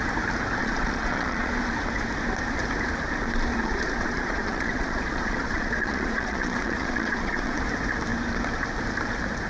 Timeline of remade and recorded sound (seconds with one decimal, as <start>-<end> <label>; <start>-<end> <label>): 0.0-0.6 recorded; 0.6-1.6 remade; 1.6-3.5 recorded; 3.5-7.6 remade; 7.6-9.5 recorded